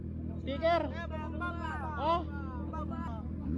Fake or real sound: real